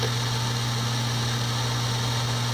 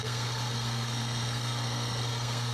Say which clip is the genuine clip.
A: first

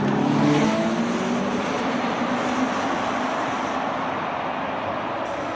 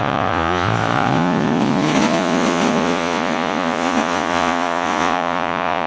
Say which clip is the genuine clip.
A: first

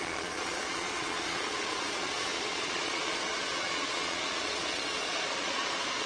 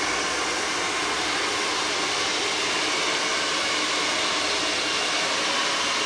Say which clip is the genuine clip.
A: second